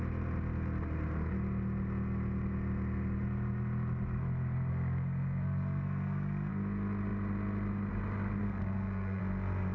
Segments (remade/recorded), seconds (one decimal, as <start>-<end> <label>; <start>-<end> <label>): 0.0-4.7 recorded; 4.7-6.5 remade; 6.5-8.4 recorded; 8.4-9.2 remade; 9.2-9.7 recorded